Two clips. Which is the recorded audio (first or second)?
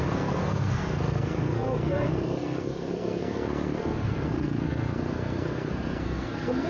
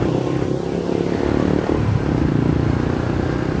second